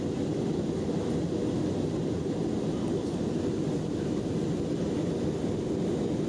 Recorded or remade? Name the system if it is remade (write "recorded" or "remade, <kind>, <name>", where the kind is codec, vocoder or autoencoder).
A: recorded